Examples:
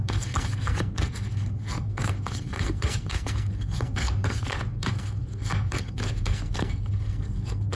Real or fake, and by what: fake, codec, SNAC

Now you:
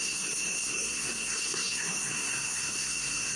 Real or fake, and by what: fake, codec, SNAC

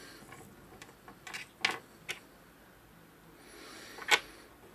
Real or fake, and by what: real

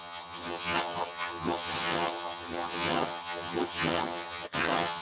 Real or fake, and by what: fake, vocoder, HiFi-GAN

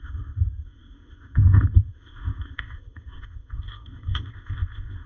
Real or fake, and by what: fake, codec, ZipCodec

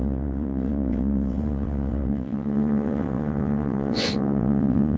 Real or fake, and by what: fake, vocoder, WaveNeXt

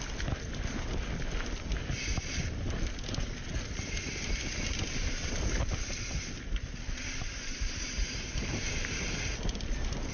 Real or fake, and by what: real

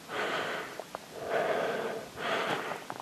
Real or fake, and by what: real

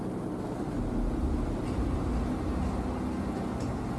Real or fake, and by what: real